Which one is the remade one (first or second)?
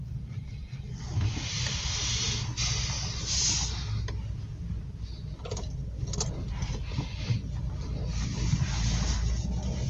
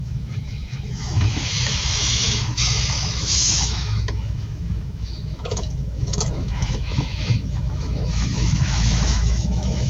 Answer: second